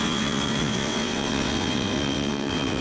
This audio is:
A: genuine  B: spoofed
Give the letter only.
B